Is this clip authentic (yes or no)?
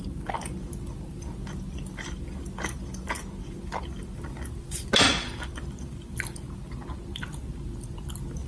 yes